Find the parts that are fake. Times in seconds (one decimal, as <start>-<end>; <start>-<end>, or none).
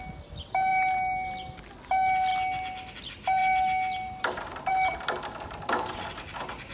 none